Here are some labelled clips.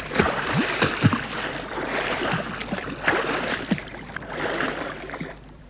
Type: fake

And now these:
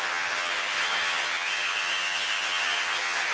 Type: fake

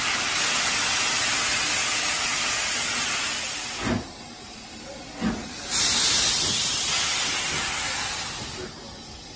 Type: real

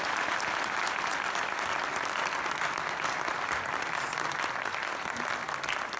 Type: real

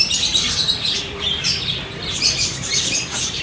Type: fake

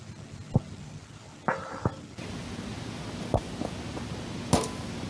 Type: real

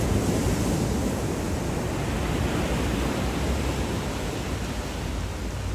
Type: real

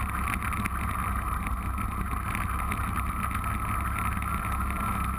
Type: real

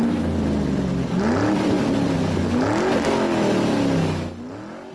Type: real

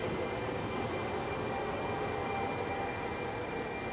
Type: real